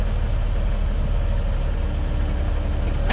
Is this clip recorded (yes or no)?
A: yes